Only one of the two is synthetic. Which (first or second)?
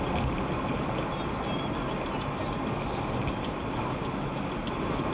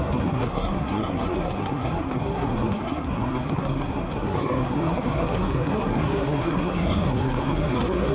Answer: second